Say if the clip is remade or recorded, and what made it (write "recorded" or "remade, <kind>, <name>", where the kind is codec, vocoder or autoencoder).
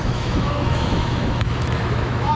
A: remade, autoencoder, DAC-VAE